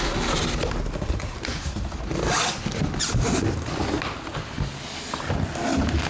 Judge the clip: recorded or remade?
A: recorded